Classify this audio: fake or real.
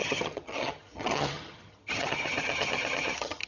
fake